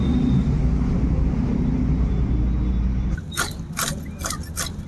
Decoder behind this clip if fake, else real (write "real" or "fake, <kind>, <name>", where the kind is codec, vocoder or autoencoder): real